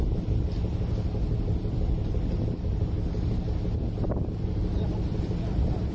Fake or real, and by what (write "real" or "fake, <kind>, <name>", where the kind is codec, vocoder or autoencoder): fake, vocoder, BigVGAN v2